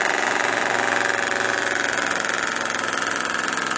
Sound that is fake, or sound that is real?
real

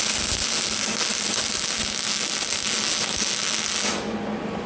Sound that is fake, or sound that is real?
real